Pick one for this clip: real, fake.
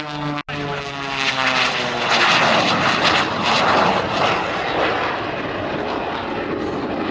real